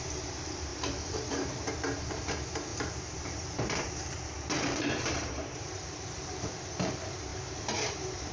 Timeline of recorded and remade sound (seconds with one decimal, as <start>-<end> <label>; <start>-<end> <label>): 0.0-0.7 recorded; 0.7-1.7 remade; 1.7-2.7 recorded; 2.7-6.5 remade; 6.5-7.3 recorded; 7.3-8.3 remade